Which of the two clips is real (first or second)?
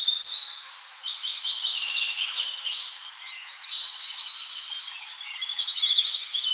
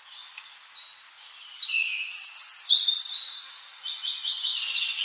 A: second